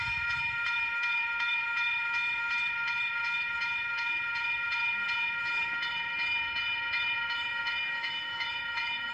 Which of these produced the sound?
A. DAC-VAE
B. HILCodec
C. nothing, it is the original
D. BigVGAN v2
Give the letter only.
A